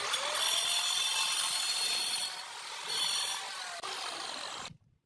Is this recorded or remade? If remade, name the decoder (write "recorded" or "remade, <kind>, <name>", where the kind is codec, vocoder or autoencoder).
recorded